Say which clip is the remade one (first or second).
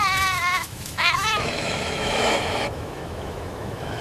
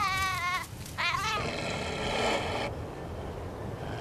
first